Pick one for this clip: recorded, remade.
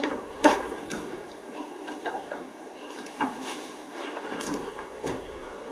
remade